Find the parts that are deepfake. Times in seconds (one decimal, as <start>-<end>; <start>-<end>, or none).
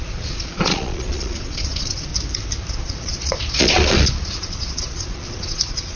0.0-2.1; 2.7-6.0